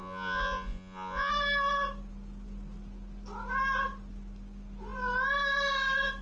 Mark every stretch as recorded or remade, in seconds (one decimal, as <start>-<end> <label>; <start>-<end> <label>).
0.0-1.3 remade; 1.3-6.2 recorded